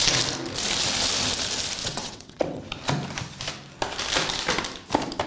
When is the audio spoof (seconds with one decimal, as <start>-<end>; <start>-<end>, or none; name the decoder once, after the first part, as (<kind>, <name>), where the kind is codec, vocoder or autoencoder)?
1.8-2.6 (vocoder, WaveNeXt)